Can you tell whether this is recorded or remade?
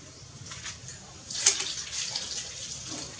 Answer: recorded